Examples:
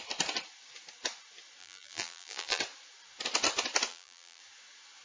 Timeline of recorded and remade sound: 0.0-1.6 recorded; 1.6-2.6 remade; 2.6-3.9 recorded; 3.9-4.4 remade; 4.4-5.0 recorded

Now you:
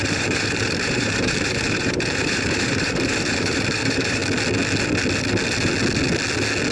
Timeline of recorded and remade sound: 0.0-4.2 remade; 4.2-6.7 recorded